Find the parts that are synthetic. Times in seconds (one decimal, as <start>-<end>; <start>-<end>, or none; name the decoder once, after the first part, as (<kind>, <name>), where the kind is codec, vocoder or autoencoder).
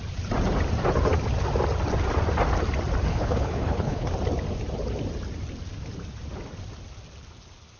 3.1-4.1 (codec, HILCodec)